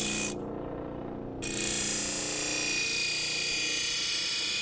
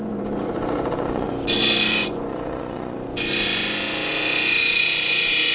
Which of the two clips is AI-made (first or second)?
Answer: second